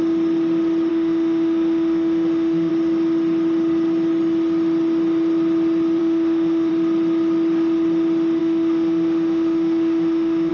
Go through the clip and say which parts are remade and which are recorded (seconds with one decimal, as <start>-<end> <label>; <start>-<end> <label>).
0.0-0.9 recorded; 0.9-2.7 remade; 2.7-6.0 recorded; 6.0-6.7 remade; 6.7-8.4 recorded; 8.4-10.5 remade